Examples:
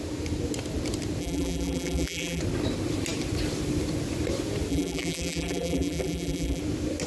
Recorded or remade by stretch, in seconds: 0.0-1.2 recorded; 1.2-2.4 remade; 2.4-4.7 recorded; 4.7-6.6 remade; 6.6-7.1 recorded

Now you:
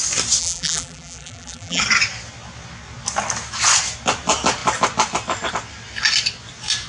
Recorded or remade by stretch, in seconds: 0.0-0.4 recorded; 0.4-1.8 remade; 1.8-6.9 recorded